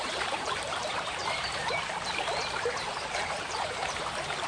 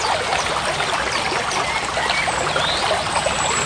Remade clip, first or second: first